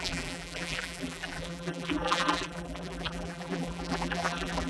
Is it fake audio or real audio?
fake